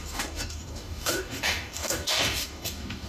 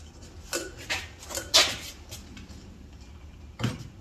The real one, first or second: second